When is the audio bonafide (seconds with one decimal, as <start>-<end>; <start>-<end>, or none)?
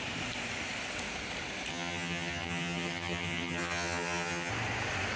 0.0-1.7; 4.5-5.2